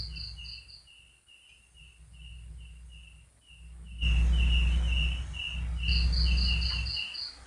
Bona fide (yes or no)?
yes